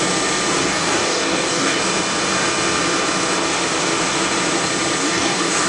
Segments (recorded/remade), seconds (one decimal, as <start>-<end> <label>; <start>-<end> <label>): 0.0-0.6 recorded; 0.6-1.8 remade; 1.8-5.0 recorded; 5.0-5.7 remade